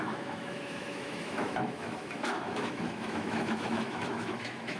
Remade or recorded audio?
remade